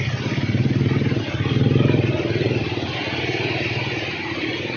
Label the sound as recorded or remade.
recorded